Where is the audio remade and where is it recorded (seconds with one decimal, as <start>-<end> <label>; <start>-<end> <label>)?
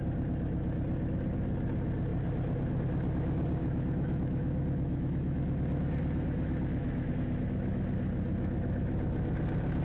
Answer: 0.0-3.6 recorded; 3.6-7.1 remade; 7.1-9.8 recorded